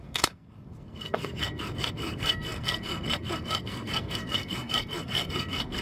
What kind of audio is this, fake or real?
fake